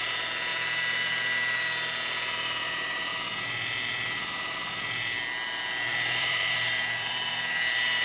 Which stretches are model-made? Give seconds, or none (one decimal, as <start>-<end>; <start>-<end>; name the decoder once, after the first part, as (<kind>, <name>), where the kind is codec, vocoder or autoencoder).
0.5-1.2 (vocoder, BigVGAN v2); 5.9-7.1